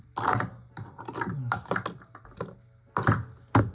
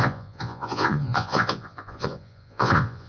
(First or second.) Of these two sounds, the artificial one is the second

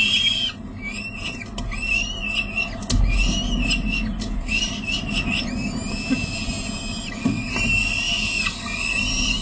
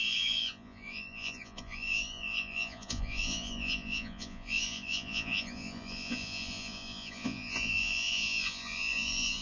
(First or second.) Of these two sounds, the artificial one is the second